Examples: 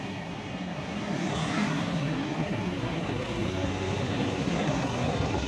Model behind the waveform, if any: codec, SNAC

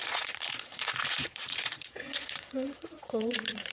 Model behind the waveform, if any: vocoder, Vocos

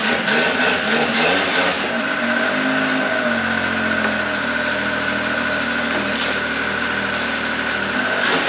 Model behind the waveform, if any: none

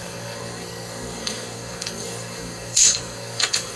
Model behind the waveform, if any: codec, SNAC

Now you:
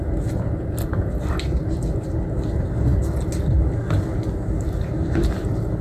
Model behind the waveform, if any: none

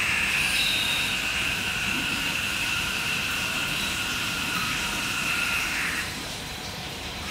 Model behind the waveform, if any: vocoder, BigVGAN v2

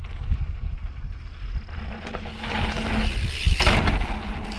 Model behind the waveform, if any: none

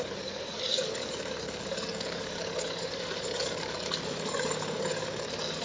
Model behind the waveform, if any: codec, DAC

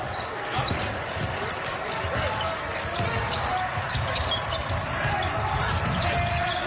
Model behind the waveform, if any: none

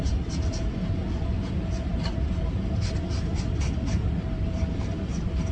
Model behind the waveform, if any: none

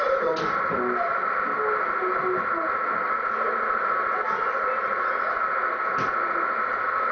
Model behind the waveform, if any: none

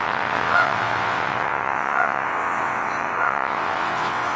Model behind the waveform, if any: vocoder, WaveNeXt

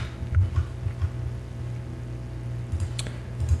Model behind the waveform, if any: none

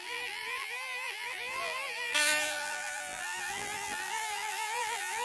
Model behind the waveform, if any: vocoder, BigVGAN v2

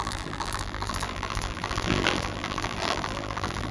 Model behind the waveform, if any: vocoder, BigVGAN v2